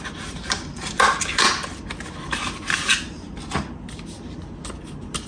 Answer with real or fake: real